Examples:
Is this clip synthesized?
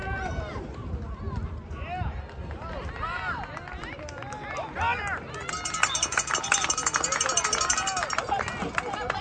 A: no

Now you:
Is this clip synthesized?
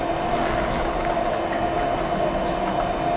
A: no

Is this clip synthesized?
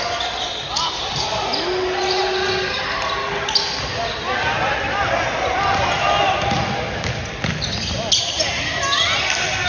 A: no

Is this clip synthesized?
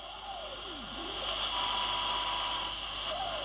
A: no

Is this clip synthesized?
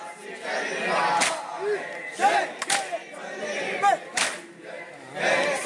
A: no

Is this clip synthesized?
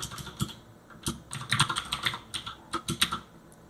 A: no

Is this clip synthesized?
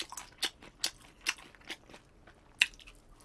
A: no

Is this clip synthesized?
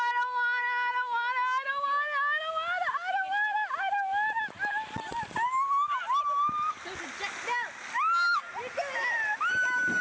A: no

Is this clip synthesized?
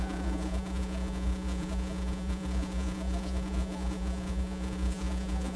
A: yes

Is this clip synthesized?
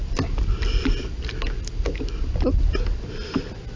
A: no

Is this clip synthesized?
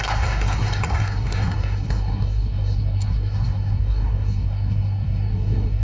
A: yes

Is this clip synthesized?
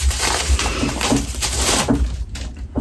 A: yes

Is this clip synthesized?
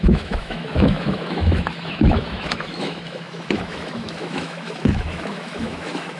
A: yes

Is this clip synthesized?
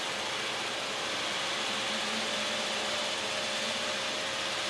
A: no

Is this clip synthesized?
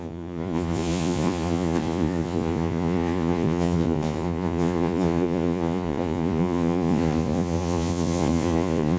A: yes